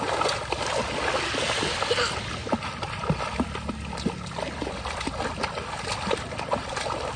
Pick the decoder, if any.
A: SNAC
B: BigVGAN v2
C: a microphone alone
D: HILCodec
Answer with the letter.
B